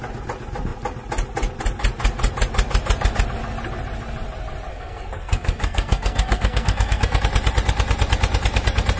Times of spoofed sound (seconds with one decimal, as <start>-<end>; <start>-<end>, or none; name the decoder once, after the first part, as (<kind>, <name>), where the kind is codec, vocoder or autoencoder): 4.7-7.2 (codec, SNAC)